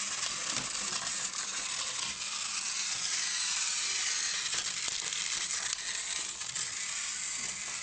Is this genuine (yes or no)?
yes